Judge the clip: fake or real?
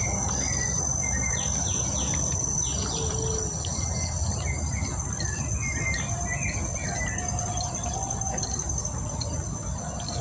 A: real